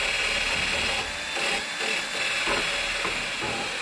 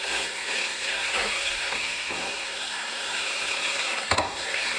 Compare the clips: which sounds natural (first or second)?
first